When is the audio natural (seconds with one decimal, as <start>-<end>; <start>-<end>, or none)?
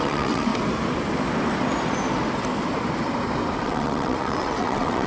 0.5-3.6